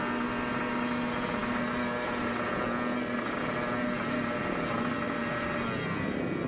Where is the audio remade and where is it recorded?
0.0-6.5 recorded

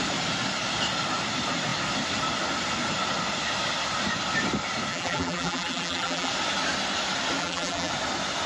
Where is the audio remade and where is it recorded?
0.0-4.9 recorded; 4.9-6.3 remade; 6.3-7.4 recorded; 7.4-7.9 remade; 7.9-8.5 recorded

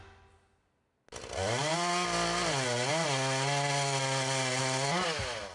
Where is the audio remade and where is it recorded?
0.0-5.5 recorded

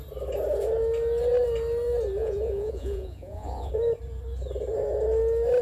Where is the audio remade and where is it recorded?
0.0-2.2 recorded; 2.2-3.7 remade; 3.7-5.6 recorded

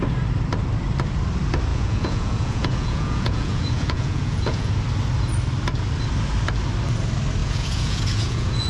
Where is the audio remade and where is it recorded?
0.0-1.7 recorded; 1.7-4.7 remade; 4.7-7.4 recorded; 7.4-8.7 remade

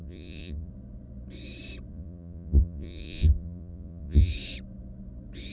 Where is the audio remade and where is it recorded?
0.0-0.7 remade; 0.7-1.9 recorded; 1.9-4.3 remade; 4.3-5.5 recorded

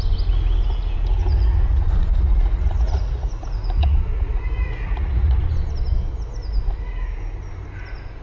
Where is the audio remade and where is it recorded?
0.0-1.2 recorded; 1.2-5.4 remade; 5.4-8.2 recorded